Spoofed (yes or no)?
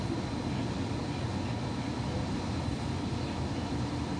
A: no